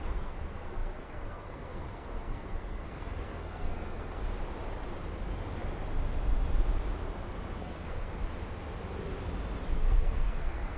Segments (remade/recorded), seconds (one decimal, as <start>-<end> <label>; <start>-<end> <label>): 0.0-4.2 remade; 4.2-7.6 recorded; 7.6-8.2 remade; 8.2-9.7 recorded; 9.7-10.8 remade